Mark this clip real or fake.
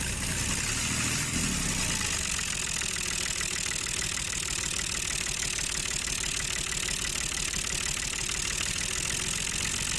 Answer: real